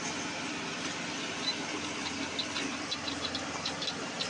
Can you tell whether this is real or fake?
real